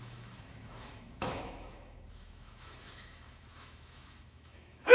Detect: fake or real fake